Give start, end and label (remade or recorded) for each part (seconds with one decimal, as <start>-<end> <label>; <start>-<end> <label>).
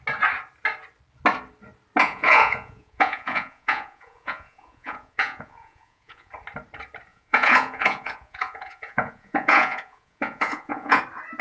0.0-2.0 recorded; 2.0-6.3 remade; 6.3-7.1 recorded; 7.1-11.0 remade; 11.0-11.4 recorded